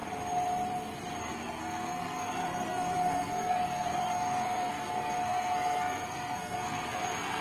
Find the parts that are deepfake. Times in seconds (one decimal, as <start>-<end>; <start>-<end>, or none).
1.2-7.4

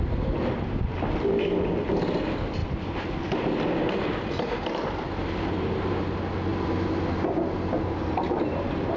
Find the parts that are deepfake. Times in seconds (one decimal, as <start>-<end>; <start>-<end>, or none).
2.6-5.9

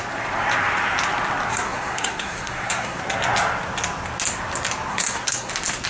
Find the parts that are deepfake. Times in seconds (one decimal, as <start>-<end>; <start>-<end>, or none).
1.5-3.0; 4.9-5.5

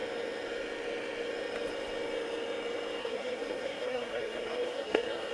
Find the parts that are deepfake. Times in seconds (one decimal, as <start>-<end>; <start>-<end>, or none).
3.0-5.3

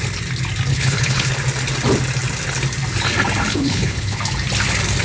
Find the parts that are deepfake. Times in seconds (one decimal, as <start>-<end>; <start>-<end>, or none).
0.7-1.3; 3.5-4.2